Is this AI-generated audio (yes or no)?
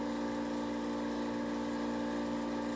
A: no